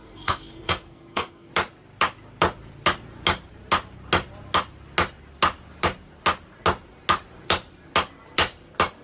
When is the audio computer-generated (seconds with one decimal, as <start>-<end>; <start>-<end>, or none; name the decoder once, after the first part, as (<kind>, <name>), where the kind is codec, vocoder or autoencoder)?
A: 0.0-1.5 (codec, SNAC)

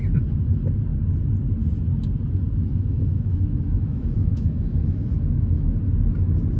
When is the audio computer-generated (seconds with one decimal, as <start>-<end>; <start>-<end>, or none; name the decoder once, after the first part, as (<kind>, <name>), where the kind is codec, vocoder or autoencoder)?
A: 2.7-5.8 (autoencoder, DAC-VAE)

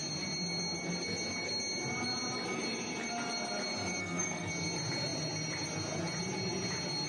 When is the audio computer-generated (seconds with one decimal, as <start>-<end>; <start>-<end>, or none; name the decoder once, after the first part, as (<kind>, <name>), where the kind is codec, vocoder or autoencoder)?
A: 4.0-4.5 (codec, SNAC)

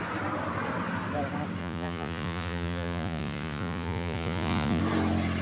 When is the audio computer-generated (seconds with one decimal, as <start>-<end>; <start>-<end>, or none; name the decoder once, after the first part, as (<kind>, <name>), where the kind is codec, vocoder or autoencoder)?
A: 1.6-4.8 (vocoder, Vocos)